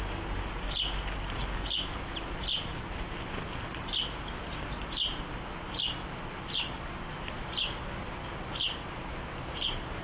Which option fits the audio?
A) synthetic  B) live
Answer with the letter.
B